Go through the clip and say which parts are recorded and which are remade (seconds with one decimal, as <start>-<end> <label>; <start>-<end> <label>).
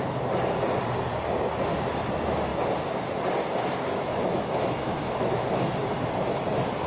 0.0-3.9 recorded; 3.9-5.5 remade; 5.5-6.9 recorded